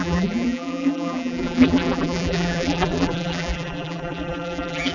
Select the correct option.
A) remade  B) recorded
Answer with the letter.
A